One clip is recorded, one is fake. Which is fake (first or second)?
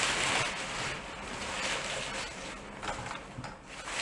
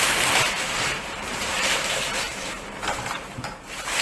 second